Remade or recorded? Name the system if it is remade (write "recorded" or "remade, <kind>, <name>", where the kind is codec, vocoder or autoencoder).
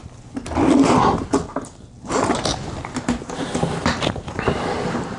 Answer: recorded